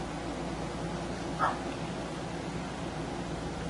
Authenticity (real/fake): real